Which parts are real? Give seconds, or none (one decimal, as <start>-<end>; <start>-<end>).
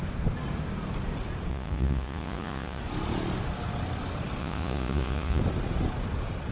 0.0-1.5; 2.8-4.4; 5.4-6.5